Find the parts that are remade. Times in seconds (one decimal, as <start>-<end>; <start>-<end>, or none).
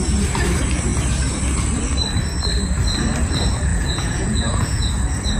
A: 3.7-4.9